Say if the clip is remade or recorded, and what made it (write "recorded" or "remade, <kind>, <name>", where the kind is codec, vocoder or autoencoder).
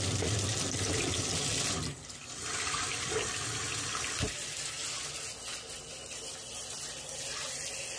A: recorded